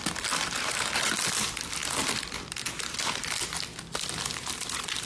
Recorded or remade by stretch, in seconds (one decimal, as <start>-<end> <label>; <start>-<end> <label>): 0.0-5.1 recorded

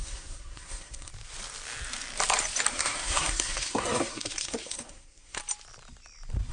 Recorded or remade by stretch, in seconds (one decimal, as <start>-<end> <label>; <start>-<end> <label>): 0.0-1.1 remade; 1.1-2.7 recorded; 2.7-5.4 remade; 5.4-6.5 recorded

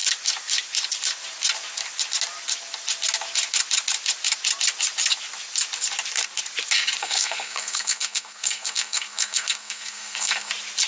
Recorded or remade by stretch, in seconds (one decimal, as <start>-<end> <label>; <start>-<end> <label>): 0.0-7.0 recorded; 7.0-10.5 remade; 10.5-10.9 recorded